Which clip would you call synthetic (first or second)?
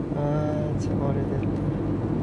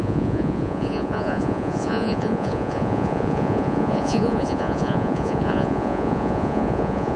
second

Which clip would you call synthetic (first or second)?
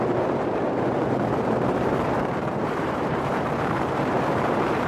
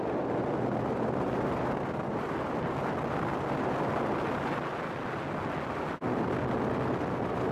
first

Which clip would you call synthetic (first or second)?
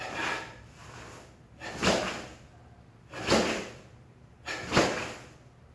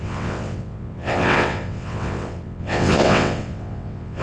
second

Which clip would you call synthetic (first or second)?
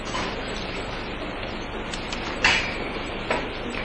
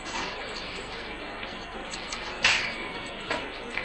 second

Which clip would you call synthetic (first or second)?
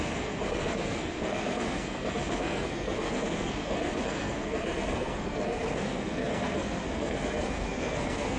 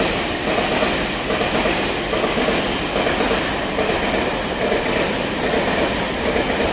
first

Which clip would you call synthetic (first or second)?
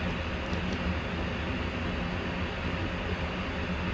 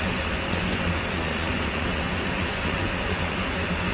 second